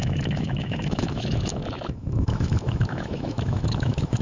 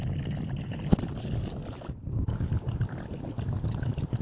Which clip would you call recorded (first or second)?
second